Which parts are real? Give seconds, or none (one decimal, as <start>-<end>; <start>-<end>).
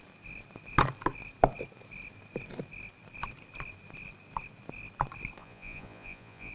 0.0-5.4